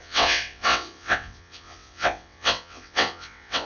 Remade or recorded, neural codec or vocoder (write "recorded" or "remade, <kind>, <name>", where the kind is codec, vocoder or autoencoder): remade, vocoder, WaveNeXt